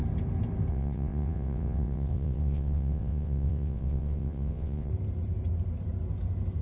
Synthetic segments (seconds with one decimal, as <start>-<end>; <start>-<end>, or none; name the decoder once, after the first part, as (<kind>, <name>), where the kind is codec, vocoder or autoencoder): 0.7-4.9 (vocoder, WaveNeXt)